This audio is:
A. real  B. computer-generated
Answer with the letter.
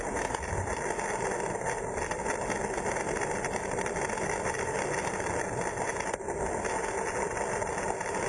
A